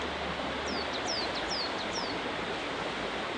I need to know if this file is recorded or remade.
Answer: recorded